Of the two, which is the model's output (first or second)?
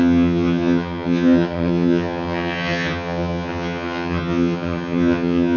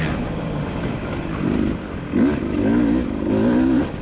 first